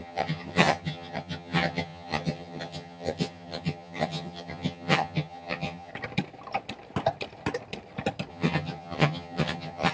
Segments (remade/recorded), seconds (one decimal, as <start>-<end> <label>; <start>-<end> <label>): 0.0-5.9 remade; 5.9-8.3 recorded; 8.3-9.9 remade

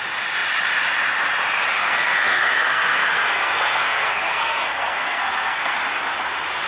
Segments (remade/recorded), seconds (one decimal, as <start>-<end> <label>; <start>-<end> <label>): 0.0-1.8 recorded; 1.8-5.8 remade; 5.8-6.7 recorded